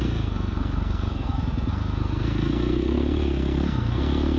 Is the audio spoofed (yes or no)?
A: yes